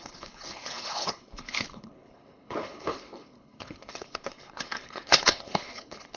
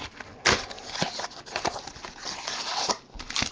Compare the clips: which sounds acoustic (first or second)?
second